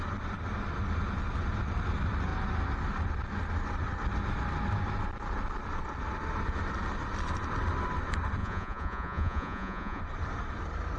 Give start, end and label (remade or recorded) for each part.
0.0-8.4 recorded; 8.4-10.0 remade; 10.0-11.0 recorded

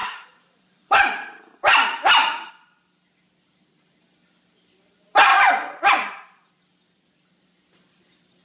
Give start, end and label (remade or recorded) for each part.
0.0-2.5 remade; 2.5-5.3 recorded; 5.3-6.5 remade; 6.5-8.4 recorded

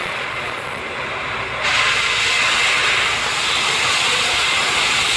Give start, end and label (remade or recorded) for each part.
0.0-0.8 remade; 0.8-3.9 recorded; 3.9-5.2 remade

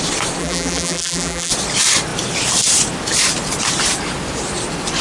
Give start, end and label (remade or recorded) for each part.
0.0-0.4 recorded; 0.4-1.5 remade; 1.5-5.0 recorded

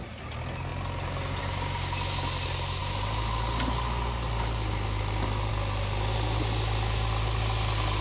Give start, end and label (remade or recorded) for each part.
0.0-8.0 recorded

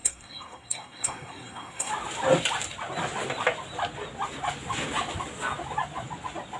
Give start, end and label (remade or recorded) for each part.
0.0-1.9 remade; 1.9-6.6 recorded

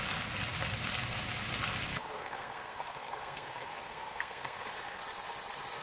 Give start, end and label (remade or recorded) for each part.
0.0-1.9 recorded; 1.9-5.0 remade; 5.0-5.8 recorded

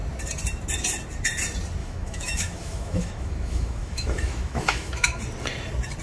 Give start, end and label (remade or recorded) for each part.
0.0-1.8 recorded; 1.8-5.2 remade; 5.2-6.0 recorded